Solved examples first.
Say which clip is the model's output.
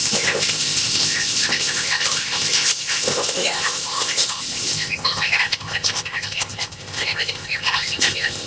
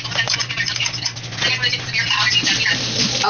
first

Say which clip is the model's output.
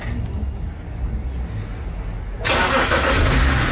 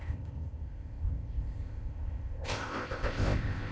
second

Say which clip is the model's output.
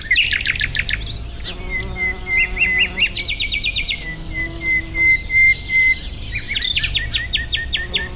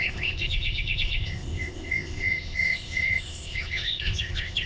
second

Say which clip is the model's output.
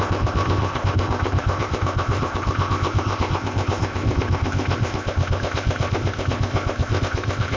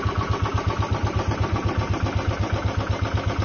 first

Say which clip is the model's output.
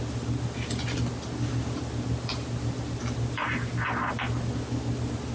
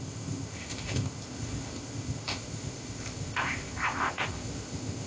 second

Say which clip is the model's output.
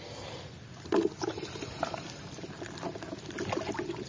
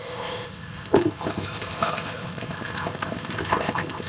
second